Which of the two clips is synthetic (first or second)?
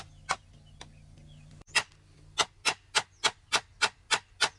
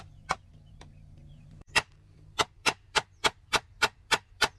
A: second